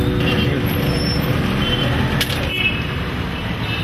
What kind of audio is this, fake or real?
real